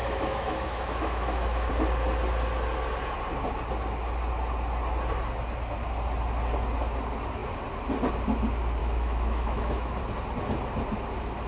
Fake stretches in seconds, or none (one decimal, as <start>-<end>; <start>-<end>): 0.0-1.7; 8.8-10.0